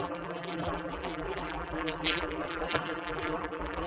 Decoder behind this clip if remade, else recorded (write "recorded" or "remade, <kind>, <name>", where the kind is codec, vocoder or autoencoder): remade, vocoder, BigVGAN v2